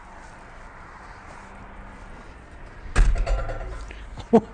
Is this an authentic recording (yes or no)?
yes